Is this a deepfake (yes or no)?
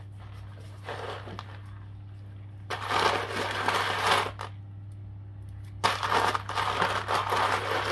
no